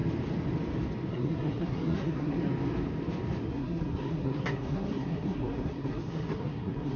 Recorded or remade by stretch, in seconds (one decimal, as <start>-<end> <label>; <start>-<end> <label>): 0.0-1.1 recorded; 1.1-2.4 remade; 2.4-3.4 recorded; 3.4-7.0 remade